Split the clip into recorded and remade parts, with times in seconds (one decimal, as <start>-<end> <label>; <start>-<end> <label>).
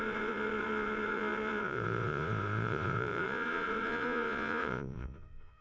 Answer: 0.0-5.6 remade